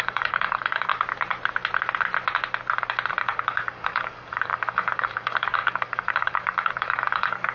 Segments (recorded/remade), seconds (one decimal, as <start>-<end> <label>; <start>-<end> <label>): 0.0-0.9 remade; 0.9-3.2 recorded; 3.2-7.5 remade